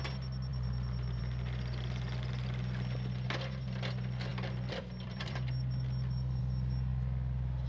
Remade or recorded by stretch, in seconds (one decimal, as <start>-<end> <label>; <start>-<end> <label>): 0.0-0.5 recorded; 0.5-1.2 remade; 1.2-4.3 recorded; 4.3-6.4 remade; 6.4-6.9 recorded; 6.9-7.7 remade

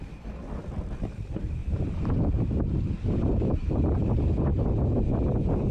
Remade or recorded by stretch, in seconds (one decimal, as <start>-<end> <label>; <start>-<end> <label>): 0.0-1.6 recorded; 1.6-3.8 remade; 3.8-5.7 recorded

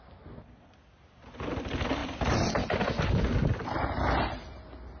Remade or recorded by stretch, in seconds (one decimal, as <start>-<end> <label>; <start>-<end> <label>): 0.0-5.0 recorded

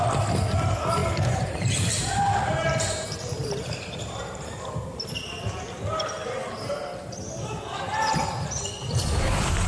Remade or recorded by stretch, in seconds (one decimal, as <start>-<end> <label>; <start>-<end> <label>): 0.0-1.0 recorded; 1.0-4.6 remade; 4.6-6.4 recorded; 6.4-7.0 remade; 7.0-9.7 recorded

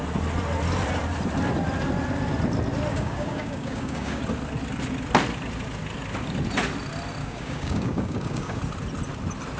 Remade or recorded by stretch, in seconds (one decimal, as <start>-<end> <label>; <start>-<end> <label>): 0.0-2.9 recorded; 2.9-4.2 remade; 4.2-7.2 recorded; 7.2-8.6 remade; 8.6-9.6 recorded

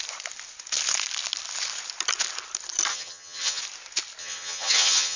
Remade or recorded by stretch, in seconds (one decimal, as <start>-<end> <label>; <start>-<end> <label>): 0.0-2.9 recorded; 2.9-3.6 remade; 3.6-4.2 recorded; 4.2-5.2 remade

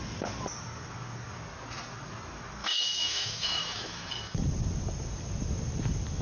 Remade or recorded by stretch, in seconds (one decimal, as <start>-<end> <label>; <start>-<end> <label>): 0.0-2.6 recorded; 2.6-4.1 remade; 4.1-6.2 recorded

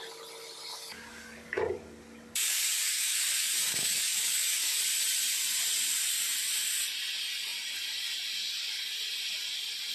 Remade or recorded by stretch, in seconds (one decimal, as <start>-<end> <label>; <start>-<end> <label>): 0.0-0.7 recorded; 0.7-4.8 remade; 4.8-9.9 recorded